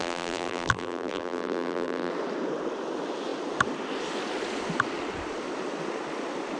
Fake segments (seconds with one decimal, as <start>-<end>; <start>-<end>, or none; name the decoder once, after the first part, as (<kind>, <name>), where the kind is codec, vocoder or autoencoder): 0.0-2.1 (vocoder, BigVGAN v2)